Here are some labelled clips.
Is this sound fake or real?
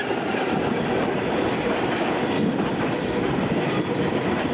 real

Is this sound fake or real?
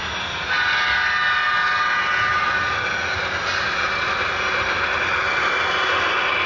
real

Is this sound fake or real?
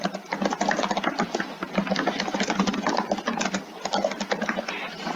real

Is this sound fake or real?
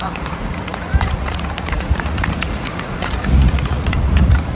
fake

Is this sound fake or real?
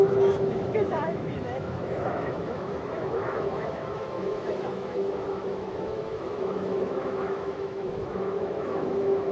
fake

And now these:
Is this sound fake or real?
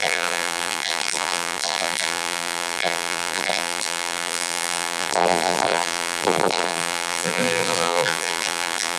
fake